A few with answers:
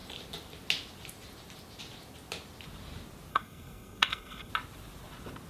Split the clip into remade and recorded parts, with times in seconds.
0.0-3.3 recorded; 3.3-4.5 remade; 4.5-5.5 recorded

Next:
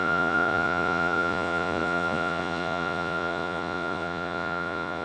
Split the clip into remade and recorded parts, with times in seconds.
0.0-5.0 remade